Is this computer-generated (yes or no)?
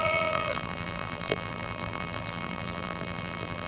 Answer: yes